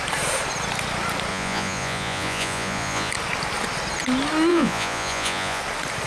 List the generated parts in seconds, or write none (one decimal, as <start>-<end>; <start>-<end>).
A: 1.3-3.1; 4.5-5.6